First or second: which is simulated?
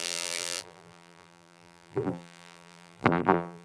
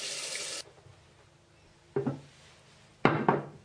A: first